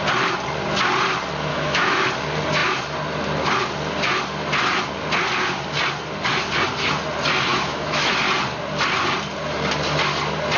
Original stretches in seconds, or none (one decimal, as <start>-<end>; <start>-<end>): 0.0-1.5; 2.1-7.5; 8.1-10.6